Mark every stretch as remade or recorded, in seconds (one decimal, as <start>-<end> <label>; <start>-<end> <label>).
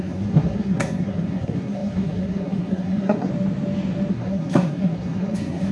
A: 0.0-3.3 remade; 3.3-4.1 recorded; 4.1-5.7 remade